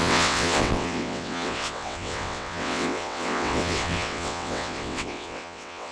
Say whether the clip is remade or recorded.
remade